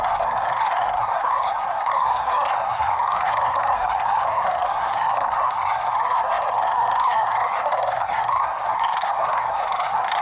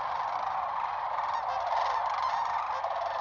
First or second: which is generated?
first